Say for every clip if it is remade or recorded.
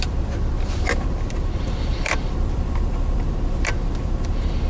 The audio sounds remade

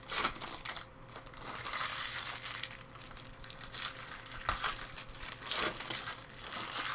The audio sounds remade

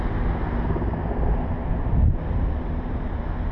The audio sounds recorded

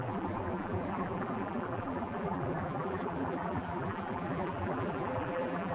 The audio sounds remade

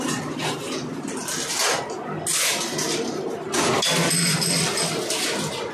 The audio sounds recorded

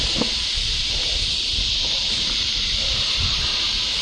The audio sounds remade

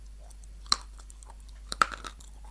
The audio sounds remade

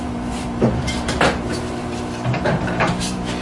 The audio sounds remade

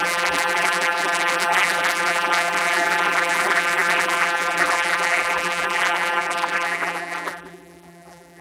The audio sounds remade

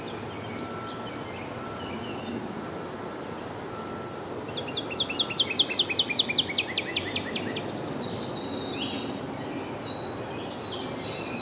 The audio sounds recorded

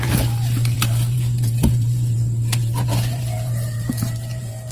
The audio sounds remade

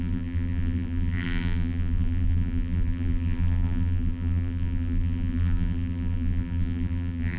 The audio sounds remade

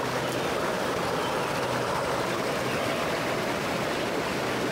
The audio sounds recorded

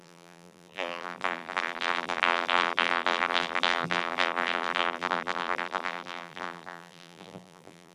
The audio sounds remade